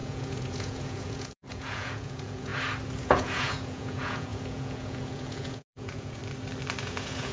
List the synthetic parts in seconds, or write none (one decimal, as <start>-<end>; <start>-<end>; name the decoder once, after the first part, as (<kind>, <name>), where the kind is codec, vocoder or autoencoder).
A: 0.0-2.5 (vocoder, Vocos); 3.0-6.2; 6.8-7.3